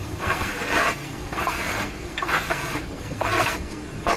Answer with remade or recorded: remade